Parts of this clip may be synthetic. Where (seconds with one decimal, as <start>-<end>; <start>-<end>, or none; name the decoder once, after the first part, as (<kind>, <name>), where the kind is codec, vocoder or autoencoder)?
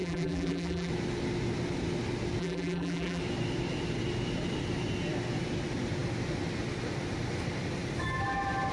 0.0-0.9 (vocoder, BigVGAN v2); 2.4-3.2